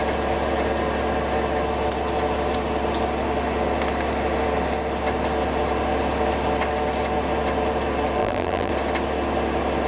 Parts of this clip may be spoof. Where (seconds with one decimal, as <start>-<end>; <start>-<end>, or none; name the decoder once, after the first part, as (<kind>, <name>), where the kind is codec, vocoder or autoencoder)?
8.2-8.7 (vocoder, BigVGAN v2)